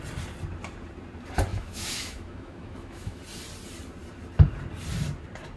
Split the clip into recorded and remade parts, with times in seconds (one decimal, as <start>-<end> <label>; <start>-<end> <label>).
0.0-1.5 recorded; 1.5-3.2 remade; 3.2-5.6 recorded